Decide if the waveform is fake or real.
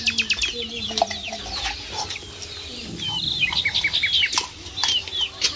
real